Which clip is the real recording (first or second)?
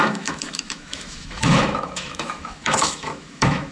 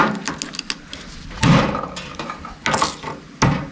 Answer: second